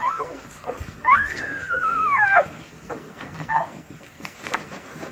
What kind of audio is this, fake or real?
fake